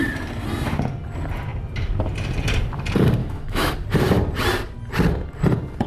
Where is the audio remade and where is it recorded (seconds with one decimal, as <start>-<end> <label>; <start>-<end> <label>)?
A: 0.0-3.2 recorded; 3.2-3.7 remade; 3.7-5.9 recorded